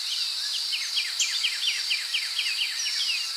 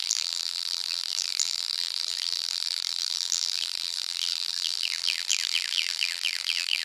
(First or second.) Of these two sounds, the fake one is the second